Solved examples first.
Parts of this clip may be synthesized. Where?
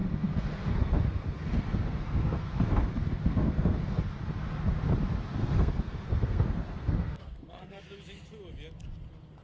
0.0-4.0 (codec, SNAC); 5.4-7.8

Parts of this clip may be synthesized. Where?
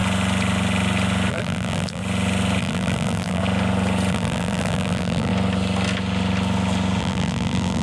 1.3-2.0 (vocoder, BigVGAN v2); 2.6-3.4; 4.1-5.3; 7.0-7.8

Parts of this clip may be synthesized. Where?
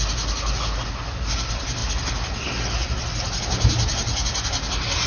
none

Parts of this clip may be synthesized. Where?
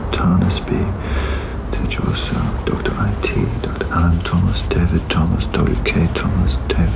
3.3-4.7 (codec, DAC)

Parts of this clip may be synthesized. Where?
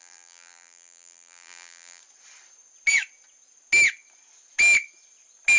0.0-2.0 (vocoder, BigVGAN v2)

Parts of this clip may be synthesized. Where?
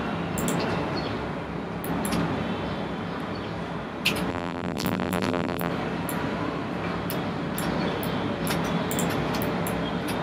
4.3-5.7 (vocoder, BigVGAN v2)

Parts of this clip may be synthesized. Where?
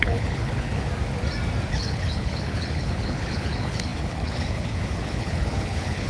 0.0-0.9 (codec, HILCodec); 1.7-6.1